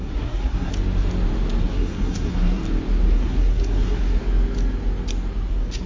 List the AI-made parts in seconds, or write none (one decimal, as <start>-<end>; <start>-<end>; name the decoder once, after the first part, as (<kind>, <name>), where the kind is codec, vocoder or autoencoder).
0.0-0.7 (codec, SNAC); 1.6-2.6; 3.1-4.2; 5.5-5.9